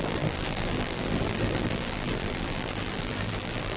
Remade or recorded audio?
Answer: remade